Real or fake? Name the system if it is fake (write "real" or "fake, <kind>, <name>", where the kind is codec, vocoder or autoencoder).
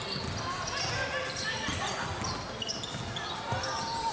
real